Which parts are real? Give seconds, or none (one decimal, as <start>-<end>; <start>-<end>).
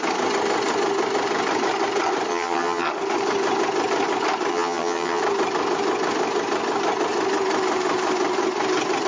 0.0-2.3; 2.9-4.5; 5.2-9.1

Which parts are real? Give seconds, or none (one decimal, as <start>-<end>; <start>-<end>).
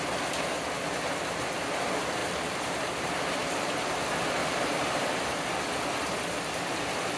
0.0-2.2; 3.8-4.4; 5.1-7.2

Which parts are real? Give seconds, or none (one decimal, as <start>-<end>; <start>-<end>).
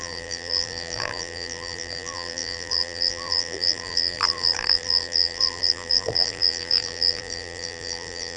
none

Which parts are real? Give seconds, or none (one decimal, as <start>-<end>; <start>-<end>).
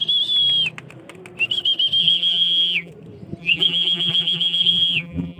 0.0-2.0; 2.9-3.4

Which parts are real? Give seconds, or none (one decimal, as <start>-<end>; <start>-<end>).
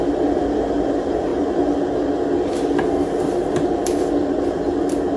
0.0-5.2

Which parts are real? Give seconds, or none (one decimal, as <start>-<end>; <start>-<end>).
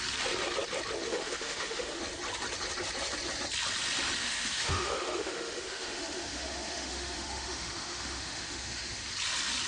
0.0-1.1; 2.0-4.2; 9.1-9.7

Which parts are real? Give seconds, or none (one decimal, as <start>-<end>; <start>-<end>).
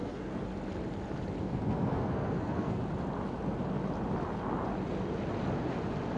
0.5-1.4; 2.8-6.2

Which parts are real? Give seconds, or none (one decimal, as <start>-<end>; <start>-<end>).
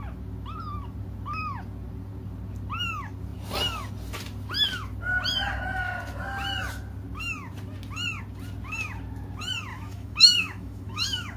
0.0-9.7